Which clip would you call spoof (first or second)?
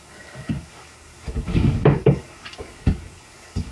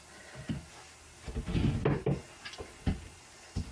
first